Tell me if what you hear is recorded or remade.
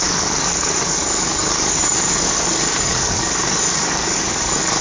remade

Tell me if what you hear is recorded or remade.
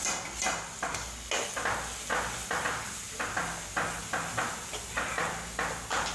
recorded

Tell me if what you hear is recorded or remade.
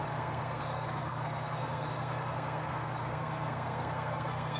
remade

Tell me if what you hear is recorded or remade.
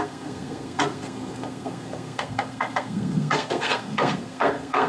remade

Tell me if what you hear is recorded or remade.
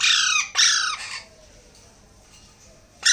recorded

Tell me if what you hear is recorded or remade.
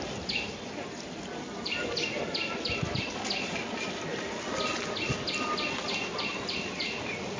recorded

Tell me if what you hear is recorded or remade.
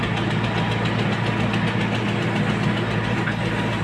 recorded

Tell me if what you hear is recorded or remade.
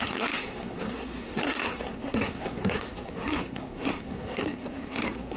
remade